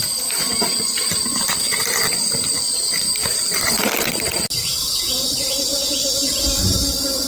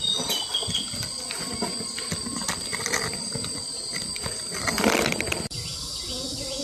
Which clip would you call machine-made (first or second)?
first